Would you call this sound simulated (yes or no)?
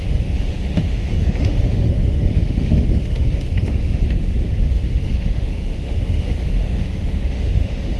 yes